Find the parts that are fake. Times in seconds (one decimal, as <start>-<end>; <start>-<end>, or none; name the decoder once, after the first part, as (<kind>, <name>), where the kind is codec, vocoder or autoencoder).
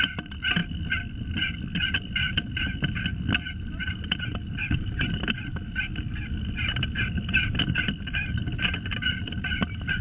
none